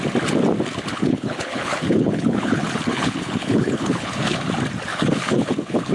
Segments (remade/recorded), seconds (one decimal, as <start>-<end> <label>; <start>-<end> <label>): 0.0-0.9 recorded; 0.9-4.4 remade; 4.4-4.9 recorded; 4.9-5.9 remade